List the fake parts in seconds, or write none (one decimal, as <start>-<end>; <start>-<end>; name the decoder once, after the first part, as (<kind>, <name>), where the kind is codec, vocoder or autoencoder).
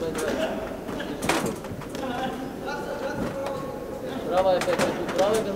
none